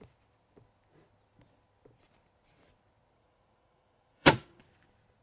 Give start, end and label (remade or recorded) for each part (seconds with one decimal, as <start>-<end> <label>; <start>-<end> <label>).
0.0-3.1 recorded; 3.1-4.6 remade; 4.6-5.2 recorded